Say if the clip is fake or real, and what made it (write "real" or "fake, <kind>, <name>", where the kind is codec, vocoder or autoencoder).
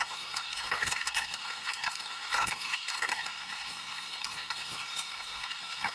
fake, codec, SNAC